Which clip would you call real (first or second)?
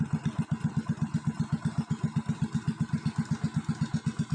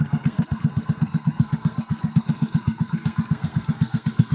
first